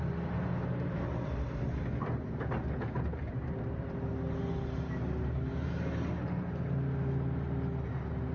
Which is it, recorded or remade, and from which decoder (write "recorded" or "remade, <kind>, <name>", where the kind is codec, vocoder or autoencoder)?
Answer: recorded